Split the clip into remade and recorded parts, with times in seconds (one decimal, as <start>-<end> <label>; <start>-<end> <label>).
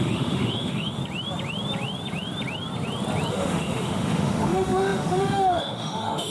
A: 0.0-1.0 remade; 1.0-3.3 recorded; 3.3-6.3 remade